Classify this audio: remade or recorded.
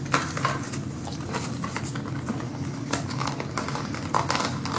recorded